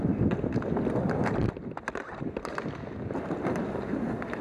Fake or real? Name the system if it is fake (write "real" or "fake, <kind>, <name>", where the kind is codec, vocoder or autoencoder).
real